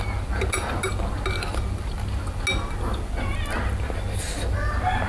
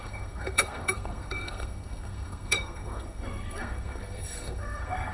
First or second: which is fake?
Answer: second